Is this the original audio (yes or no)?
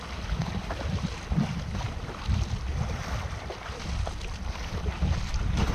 yes